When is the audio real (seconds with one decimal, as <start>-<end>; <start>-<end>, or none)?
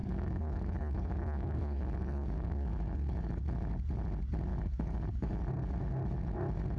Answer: 3.4-4.5; 5.4-6.8